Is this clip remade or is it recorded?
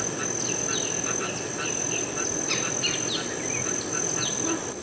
recorded